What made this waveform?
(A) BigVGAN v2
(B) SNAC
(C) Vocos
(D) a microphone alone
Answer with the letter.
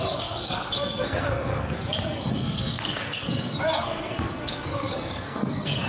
B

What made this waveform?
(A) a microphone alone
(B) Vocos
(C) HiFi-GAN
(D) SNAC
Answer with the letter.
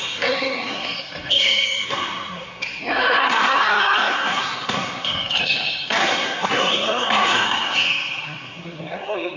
D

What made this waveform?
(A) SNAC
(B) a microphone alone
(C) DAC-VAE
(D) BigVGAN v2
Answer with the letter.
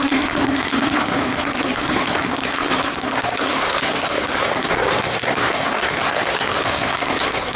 A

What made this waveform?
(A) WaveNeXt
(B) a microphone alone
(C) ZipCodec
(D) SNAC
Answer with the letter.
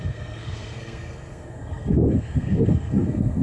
D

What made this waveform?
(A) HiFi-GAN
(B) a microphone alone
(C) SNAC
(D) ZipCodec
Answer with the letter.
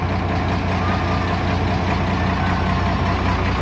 B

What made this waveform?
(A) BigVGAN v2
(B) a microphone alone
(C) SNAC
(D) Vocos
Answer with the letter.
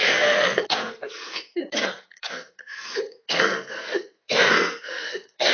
C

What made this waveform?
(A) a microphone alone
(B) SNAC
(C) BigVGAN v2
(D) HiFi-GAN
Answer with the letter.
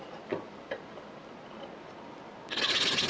A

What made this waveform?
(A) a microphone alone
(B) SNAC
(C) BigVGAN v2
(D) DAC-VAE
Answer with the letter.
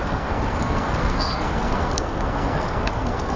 B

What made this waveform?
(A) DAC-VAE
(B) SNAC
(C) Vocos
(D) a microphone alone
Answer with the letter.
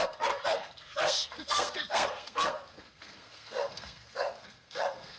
B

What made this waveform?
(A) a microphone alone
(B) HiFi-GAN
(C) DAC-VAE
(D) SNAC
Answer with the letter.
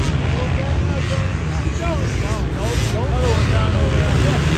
A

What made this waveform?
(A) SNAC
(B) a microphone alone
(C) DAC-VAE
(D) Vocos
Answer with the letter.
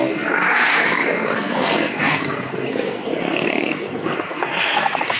A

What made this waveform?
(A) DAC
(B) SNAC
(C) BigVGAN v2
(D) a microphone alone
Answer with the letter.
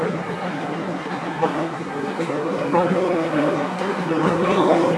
B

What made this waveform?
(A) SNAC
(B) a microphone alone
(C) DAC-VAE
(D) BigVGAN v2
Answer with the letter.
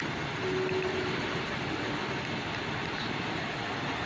B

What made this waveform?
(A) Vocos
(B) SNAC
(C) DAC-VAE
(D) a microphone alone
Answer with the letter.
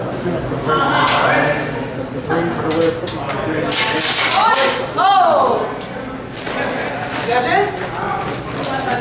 D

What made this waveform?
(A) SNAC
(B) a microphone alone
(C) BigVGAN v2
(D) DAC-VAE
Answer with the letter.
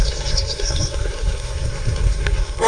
A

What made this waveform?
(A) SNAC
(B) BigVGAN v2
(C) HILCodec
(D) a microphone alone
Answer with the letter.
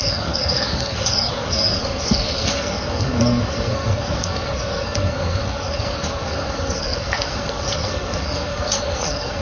A